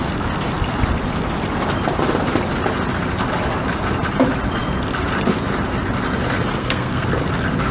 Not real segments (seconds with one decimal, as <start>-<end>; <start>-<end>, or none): 6.6-7.1